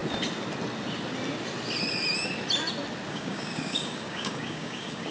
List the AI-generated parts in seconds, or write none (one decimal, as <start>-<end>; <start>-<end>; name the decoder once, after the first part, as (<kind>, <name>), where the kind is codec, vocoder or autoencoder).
3.1-5.1 (codec, DAC)